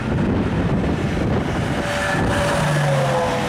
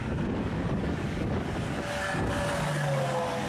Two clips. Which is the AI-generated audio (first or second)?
second